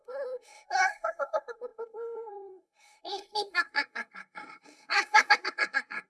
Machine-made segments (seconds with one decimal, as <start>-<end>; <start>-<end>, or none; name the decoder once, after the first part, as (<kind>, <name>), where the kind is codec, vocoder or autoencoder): 0.0-6.1 (codec, SNAC)